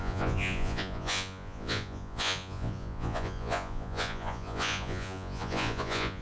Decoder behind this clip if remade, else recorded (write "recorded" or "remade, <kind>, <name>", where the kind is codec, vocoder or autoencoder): remade, vocoder, Vocos